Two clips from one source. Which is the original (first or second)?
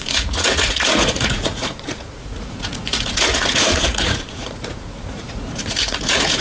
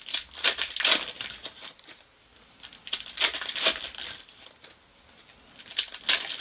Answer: second